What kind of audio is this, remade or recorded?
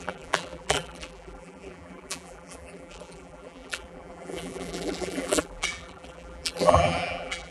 remade